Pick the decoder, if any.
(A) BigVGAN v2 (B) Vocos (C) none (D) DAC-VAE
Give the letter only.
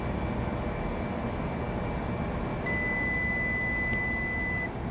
C